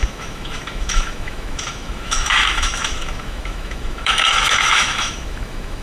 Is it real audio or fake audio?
fake